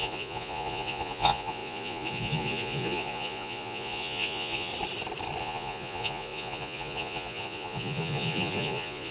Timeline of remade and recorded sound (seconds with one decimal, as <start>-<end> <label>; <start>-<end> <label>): 0.0-4.7 remade; 4.7-5.4 recorded; 5.4-9.1 remade